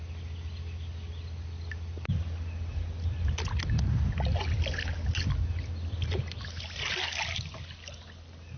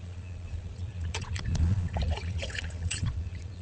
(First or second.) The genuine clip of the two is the first